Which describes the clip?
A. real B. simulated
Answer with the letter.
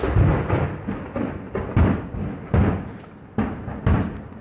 A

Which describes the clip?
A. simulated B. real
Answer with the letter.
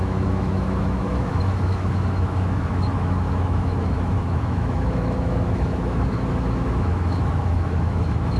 A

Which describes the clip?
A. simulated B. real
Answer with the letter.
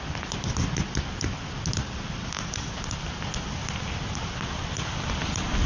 B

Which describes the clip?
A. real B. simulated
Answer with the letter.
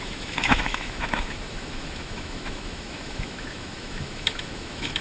B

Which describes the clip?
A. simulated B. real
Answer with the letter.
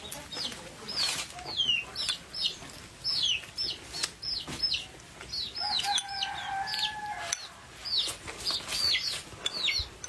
B